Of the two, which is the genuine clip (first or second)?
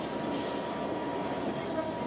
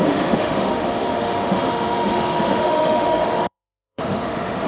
first